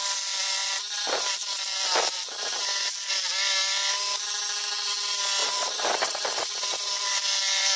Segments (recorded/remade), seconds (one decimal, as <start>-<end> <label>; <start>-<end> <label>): 0.0-0.6 recorded; 0.6-3.1 remade; 3.1-5.4 recorded; 5.4-7.2 remade; 7.2-7.8 recorded